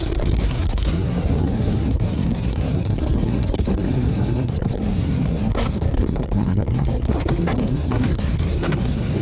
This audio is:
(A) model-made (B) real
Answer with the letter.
A